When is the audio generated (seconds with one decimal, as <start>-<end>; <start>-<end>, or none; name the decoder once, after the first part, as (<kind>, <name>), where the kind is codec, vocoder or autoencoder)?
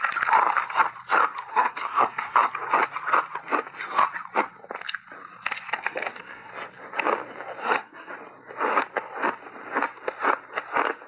1.5-2.5 (codec, SNAC); 5.8-6.5; 7.6-8.1